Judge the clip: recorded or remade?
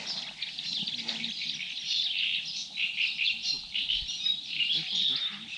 recorded